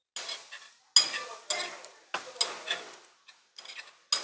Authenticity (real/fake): real